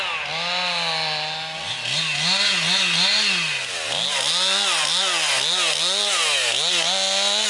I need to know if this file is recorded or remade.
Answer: recorded